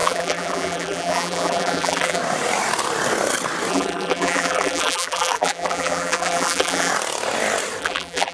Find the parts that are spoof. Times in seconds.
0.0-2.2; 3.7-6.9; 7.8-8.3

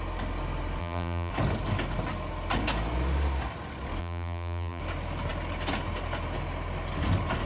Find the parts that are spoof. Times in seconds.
0.8-1.3; 4.0-4.8